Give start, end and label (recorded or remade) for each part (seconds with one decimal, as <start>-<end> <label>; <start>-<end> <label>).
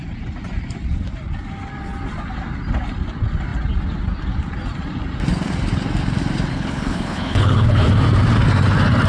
0.0-6.5 recorded; 6.5-7.9 remade; 7.9-9.1 recorded